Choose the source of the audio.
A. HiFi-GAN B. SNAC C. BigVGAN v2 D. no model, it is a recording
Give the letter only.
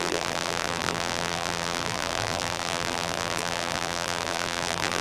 C